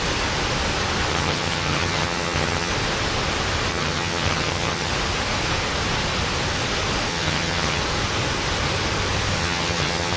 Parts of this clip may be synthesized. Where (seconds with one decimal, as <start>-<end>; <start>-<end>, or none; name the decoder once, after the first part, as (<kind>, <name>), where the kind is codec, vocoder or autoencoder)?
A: 1.1-2.7 (vocoder, HiFi-GAN); 3.7-4.9; 7.1-7.8; 9.4-10.2